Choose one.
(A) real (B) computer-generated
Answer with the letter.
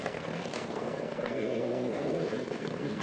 B